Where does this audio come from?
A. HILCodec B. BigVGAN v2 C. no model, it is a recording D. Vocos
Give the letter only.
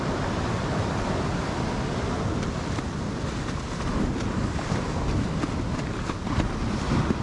C